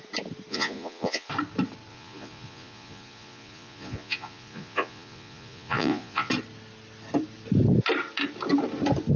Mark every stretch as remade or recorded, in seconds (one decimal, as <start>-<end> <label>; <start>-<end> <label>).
0.0-0.5 recorded; 0.5-1.3 remade; 1.3-1.9 recorded; 1.9-6.3 remade; 6.3-9.2 recorded